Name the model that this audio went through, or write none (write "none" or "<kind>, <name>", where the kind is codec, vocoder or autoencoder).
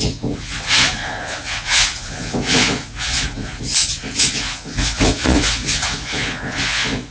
vocoder, Vocos